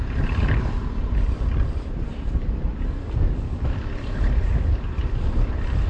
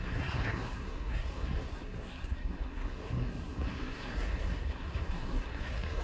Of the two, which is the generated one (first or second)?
second